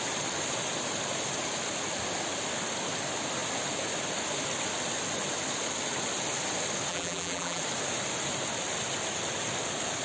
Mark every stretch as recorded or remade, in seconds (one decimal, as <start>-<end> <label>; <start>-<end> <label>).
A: 0.0-6.9 recorded; 6.9-7.6 remade; 7.6-10.0 recorded